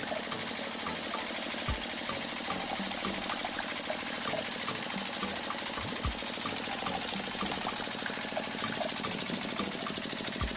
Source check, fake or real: real